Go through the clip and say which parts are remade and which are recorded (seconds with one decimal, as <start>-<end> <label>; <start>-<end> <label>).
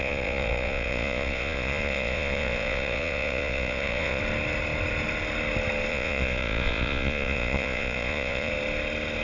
0.0-4.2 remade; 4.2-5.9 recorded; 5.9-8.5 remade; 8.5-9.2 recorded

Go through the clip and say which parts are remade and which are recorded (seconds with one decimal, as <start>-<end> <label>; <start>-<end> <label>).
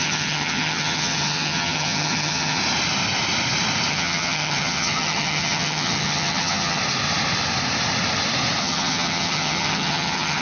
0.0-2.6 remade; 2.6-3.9 recorded; 3.9-6.8 remade; 6.8-8.6 recorded; 8.6-10.4 remade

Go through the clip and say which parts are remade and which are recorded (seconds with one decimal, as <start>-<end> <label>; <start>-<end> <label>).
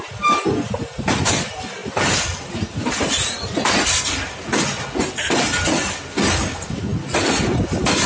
0.0-8.1 recorded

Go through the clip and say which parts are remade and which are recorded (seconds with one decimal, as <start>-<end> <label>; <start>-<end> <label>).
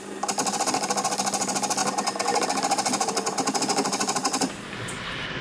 0.0-1.8 recorded; 1.8-4.7 remade; 4.7-5.4 recorded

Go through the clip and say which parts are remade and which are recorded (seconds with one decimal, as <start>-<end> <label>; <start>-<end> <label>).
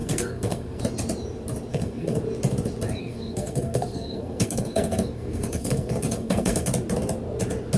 0.0-0.8 remade; 0.8-1.7 recorded; 1.7-2.2 remade; 2.2-3.0 recorded; 3.0-6.7 remade; 6.7-7.8 recorded